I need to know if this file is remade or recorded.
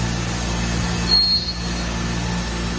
recorded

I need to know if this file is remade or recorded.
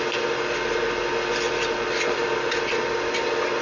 recorded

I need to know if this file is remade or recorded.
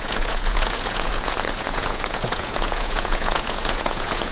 remade